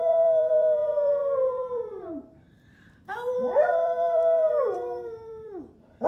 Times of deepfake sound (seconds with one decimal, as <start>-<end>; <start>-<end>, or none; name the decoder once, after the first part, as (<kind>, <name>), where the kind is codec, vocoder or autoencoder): 0.0-6.1 (vocoder, BigVGAN v2)